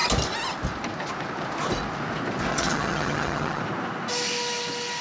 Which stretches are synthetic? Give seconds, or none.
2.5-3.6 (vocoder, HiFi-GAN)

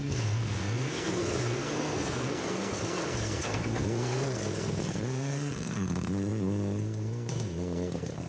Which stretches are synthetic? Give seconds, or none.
0.0-8.3 (codec, SNAC)

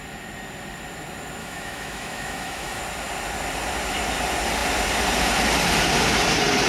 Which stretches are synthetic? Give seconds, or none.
1.4-2.8 (autoencoder, DAC-VAE)

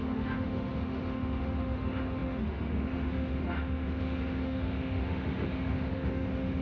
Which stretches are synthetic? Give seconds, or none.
0.0-6.6 (autoencoder, DAC-VAE)